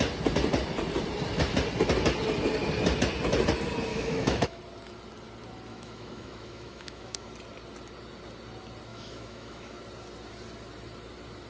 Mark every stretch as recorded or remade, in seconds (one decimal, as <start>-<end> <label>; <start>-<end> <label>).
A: 0.0-3.9 recorded; 3.9-4.6 remade; 4.6-5.7 recorded; 5.7-7.3 remade; 7.3-8.9 recorded; 8.9-9.8 remade; 9.8-11.5 recorded